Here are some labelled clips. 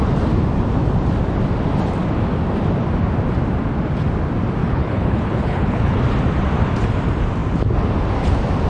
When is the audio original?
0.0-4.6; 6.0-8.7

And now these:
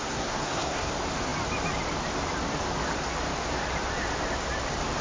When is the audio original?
0.9-5.0

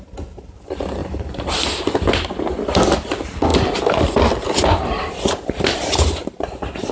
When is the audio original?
0.0-1.0; 2.1-3.5; 5.1-6.9

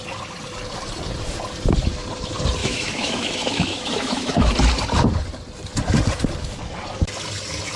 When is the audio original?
0.0-2.6; 4.5-7.8

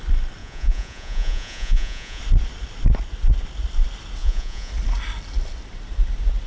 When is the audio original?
0.0-0.4; 2.2-4.2; 4.7-6.5